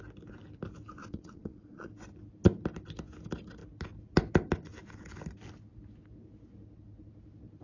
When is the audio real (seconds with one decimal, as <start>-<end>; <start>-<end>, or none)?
0.0-1.0; 1.9-7.6